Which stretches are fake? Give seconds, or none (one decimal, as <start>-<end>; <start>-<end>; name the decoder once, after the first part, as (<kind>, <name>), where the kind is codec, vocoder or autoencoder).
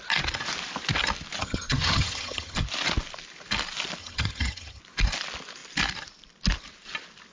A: 1.4-2.6 (vocoder, HiFi-GAN); 4.0-4.8